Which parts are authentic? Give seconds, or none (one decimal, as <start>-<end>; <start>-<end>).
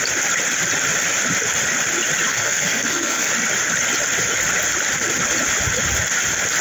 0.0-2.3; 3.3-6.6